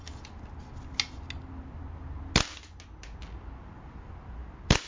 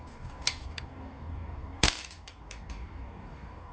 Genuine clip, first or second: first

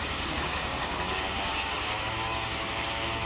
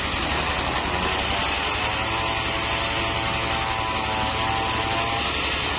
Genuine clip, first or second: second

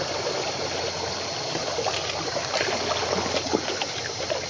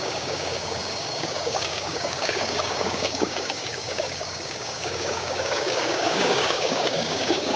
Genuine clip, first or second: first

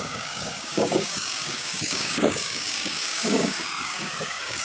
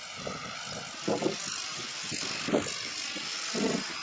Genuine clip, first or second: second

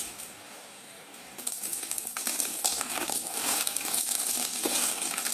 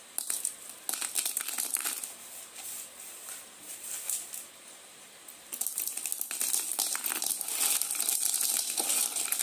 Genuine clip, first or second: second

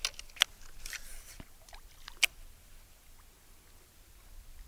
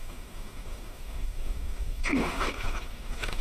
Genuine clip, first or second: first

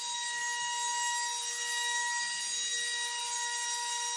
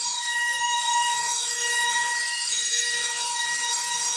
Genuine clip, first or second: first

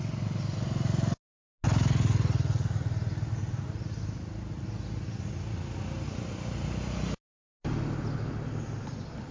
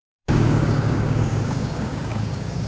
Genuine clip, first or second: first